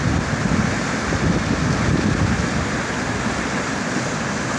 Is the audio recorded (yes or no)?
yes